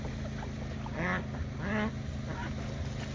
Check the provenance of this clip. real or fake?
real